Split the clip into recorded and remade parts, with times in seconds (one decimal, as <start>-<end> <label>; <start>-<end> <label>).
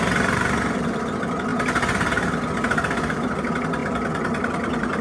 0.0-5.0 recorded